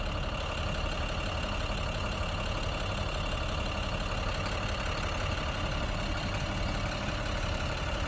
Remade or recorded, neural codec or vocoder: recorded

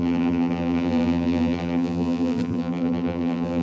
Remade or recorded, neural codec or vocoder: remade, vocoder, BigVGAN v2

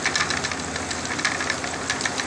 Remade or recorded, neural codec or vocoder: recorded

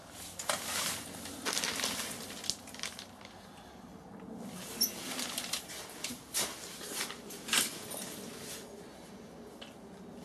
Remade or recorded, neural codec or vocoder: recorded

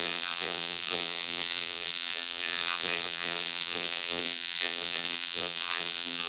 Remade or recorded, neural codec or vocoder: remade, vocoder, BigVGAN v2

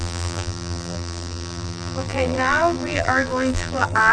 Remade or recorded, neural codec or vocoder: remade, vocoder, BigVGAN v2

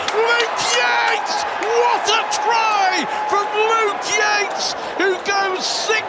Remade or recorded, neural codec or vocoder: recorded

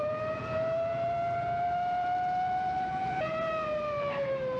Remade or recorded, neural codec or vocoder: remade, vocoder, BigVGAN v2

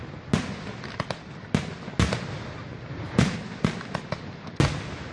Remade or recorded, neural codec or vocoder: recorded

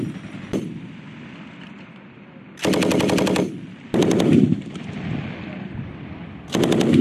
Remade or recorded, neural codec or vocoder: remade, vocoder, BigVGAN v2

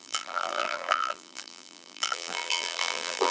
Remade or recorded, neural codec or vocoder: remade, vocoder, BigVGAN v2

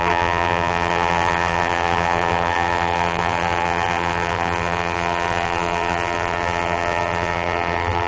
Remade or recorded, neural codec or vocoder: remade, vocoder, BigVGAN v2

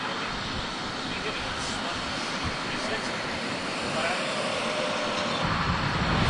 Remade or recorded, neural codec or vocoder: recorded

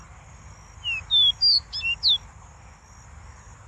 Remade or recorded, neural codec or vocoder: recorded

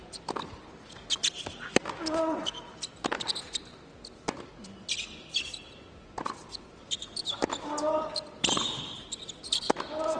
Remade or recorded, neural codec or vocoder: recorded